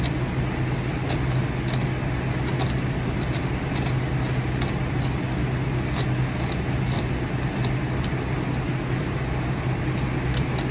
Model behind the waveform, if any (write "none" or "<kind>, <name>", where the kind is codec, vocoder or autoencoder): none